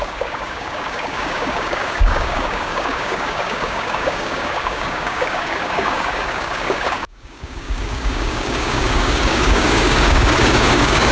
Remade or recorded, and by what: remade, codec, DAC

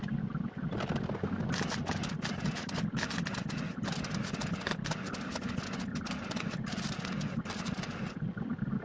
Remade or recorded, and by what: recorded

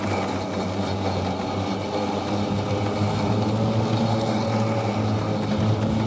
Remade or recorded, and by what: recorded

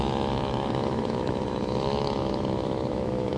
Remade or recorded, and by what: remade, autoencoder, DAC-VAE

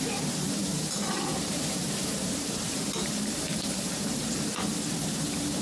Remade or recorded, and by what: remade, vocoder, BigVGAN v2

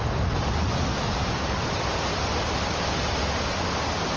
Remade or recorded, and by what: recorded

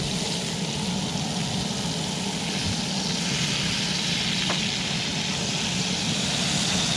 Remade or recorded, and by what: recorded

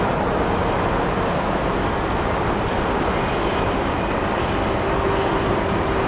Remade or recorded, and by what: recorded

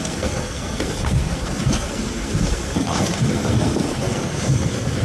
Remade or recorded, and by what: remade, codec, SNAC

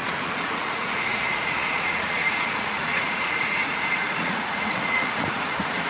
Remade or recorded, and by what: remade, vocoder, Vocos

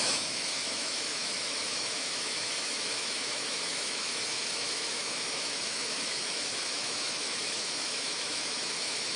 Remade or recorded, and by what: remade, autoencoder, DAC-VAE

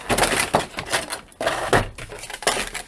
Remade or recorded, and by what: recorded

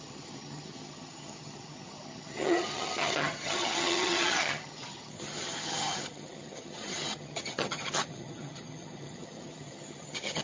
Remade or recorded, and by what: remade, vocoder, HiFi-GAN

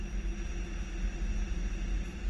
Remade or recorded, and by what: recorded